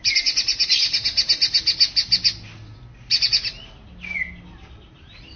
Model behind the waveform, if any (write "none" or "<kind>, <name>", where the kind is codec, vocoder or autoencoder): none